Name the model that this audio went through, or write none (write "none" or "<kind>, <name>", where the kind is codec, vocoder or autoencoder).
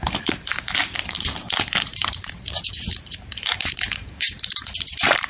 vocoder, BigVGAN v2